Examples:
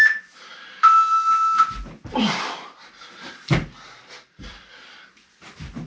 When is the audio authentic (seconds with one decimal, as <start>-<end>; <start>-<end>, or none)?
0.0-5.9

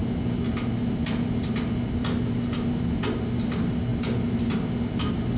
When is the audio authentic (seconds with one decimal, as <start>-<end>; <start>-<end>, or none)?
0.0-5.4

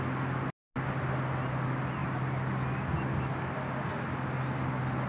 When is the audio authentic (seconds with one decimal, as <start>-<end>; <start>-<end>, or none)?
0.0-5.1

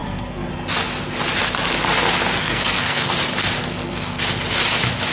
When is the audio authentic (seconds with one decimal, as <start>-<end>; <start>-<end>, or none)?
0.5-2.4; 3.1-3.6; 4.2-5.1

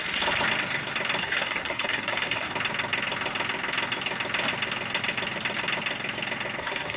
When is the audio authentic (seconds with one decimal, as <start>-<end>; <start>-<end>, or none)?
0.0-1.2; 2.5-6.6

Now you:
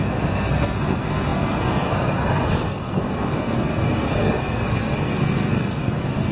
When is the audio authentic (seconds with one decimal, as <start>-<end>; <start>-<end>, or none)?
none

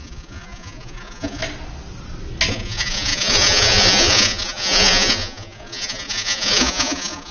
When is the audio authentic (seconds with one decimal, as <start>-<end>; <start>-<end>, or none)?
1.4-2.5